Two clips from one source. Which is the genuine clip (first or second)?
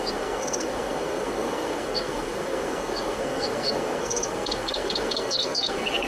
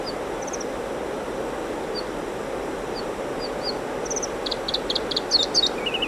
second